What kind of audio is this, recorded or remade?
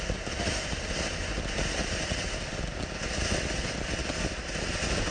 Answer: recorded